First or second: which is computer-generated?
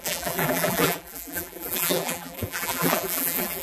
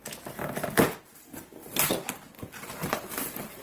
first